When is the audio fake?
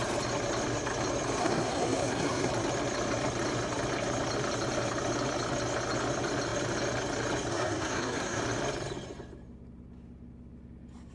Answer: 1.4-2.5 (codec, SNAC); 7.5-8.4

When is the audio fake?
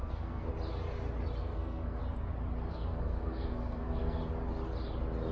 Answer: 0.0-0.5 (codec, SNAC); 1.4-2.0; 2.7-4.2